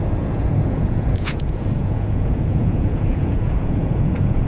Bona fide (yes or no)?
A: no